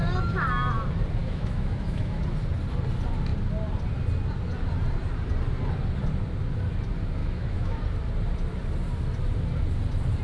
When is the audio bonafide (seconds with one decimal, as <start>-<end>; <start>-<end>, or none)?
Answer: 0.0-1.2; 2.2-7.2; 7.8-10.2